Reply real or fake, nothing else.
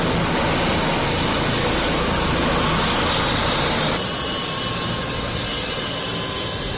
real